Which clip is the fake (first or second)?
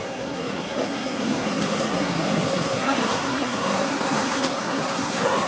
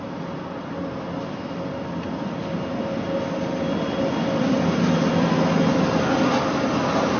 first